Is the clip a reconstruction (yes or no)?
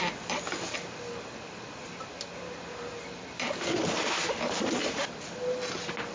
no